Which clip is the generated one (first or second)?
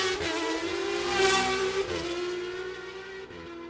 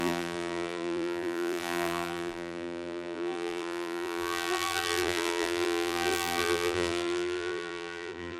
second